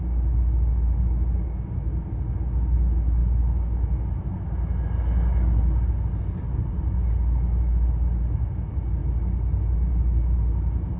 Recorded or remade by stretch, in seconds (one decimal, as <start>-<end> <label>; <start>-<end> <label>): 0.0-11.0 recorded